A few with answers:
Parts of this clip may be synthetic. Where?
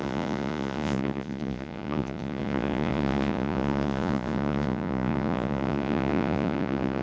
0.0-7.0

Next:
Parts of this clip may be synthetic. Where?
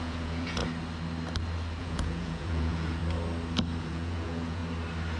0.0-0.6; 1.8-3.0; 3.8-4.6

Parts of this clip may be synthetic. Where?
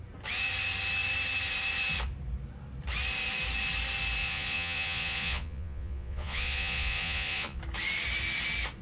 4.2-7.6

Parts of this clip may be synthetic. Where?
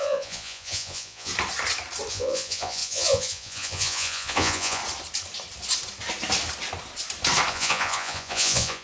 0.0-1.3; 2.1-4.8; 7.5-8.8